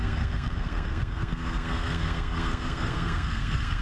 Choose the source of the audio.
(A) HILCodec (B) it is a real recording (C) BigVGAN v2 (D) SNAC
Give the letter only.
D